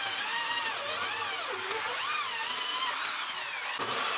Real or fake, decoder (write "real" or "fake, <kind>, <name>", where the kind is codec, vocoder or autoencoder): real